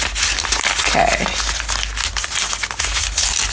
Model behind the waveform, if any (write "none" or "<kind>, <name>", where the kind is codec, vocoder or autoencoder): none